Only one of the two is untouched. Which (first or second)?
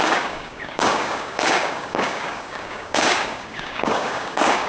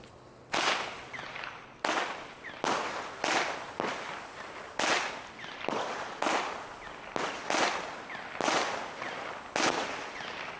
second